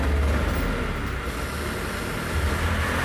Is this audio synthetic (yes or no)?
no